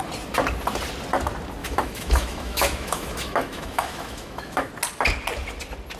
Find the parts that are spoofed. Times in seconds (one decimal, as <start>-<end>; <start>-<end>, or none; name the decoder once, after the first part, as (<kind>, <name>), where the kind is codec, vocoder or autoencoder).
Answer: 1.6-4.7 (autoencoder, DAC-VAE)